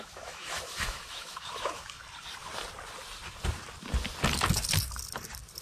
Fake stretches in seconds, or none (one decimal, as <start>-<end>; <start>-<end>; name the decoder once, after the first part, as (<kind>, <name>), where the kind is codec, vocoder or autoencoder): 0.0-2.0 (autoencoder, DAC-VAE)